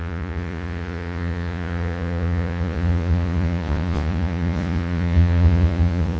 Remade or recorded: remade